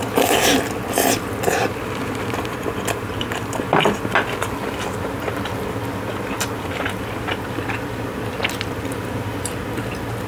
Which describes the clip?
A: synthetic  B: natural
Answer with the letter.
A